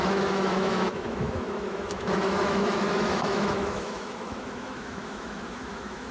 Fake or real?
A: fake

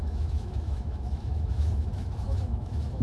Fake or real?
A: fake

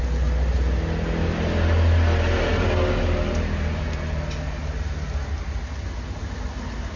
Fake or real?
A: real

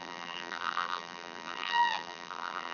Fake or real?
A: fake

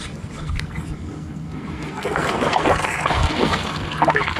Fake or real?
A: fake